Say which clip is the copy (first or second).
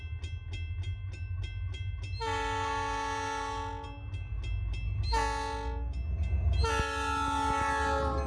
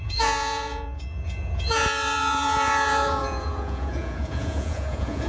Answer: second